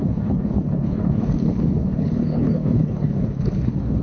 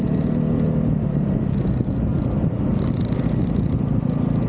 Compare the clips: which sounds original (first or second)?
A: second